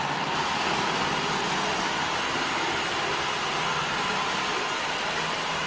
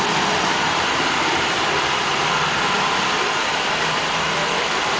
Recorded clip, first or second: first